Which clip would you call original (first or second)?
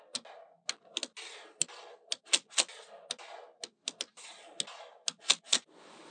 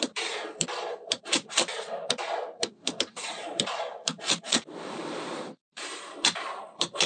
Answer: first